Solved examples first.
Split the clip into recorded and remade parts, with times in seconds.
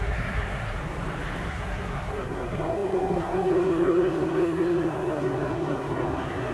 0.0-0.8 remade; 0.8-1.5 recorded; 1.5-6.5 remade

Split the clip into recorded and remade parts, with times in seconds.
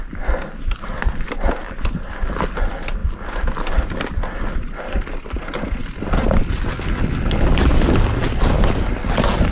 0.0-9.5 recorded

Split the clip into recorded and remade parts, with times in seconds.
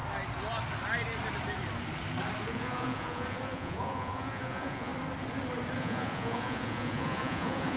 0.0-2.4 recorded; 2.4-4.9 remade; 4.9-5.8 recorded; 5.8-7.8 remade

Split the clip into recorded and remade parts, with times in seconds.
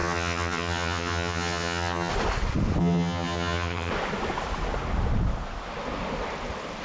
0.0-2.1 remade; 2.1-2.8 recorded; 2.8-3.9 remade; 3.9-6.8 recorded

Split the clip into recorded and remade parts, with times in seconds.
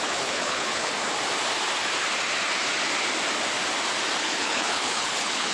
0.0-0.9 remade; 0.9-4.2 recorded; 4.2-5.5 remade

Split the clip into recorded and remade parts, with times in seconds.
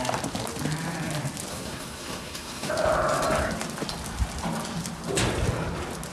0.0-1.5 recorded; 1.5-2.7 remade; 2.7-6.1 recorded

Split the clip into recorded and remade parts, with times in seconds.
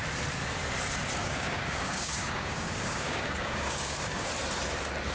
0.0-1.2 recorded; 1.2-4.3 remade; 4.3-5.1 recorded